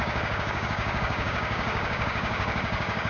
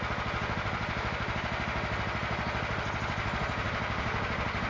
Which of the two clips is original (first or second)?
second